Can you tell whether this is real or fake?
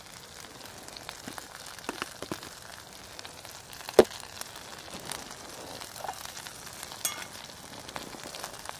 real